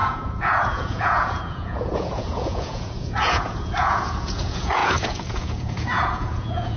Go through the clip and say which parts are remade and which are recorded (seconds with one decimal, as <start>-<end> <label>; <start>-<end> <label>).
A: 0.0-6.8 remade